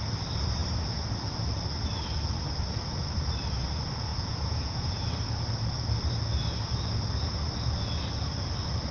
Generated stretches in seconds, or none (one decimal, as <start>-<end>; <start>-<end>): 4.1-5.0